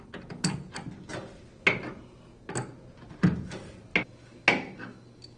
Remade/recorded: recorded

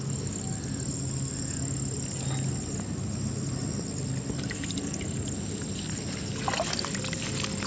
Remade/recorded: recorded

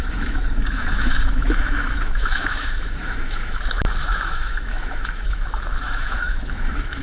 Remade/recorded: remade